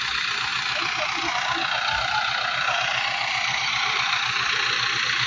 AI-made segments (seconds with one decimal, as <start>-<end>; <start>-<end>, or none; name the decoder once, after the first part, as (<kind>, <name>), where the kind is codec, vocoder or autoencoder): none